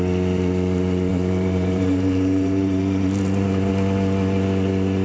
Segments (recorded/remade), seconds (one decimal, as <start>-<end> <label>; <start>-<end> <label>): 0.0-1.1 recorded; 1.1-3.7 remade; 3.7-5.0 recorded